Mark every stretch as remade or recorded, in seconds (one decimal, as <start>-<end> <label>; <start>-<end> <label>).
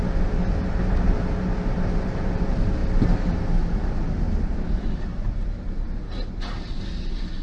0.0-7.4 recorded